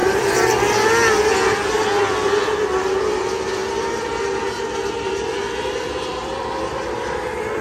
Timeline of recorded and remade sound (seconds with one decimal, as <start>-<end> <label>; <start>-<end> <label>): 0.0-3.1 recorded; 3.1-3.6 remade; 3.6-5.0 recorded; 5.0-7.6 remade